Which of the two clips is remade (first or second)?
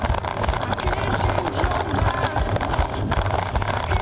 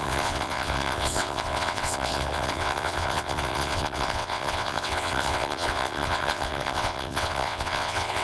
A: second